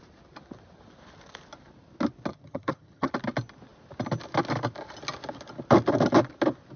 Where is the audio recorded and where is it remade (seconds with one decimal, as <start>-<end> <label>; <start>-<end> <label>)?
0.0-2.3 recorded; 2.3-3.1 remade; 3.1-6.8 recorded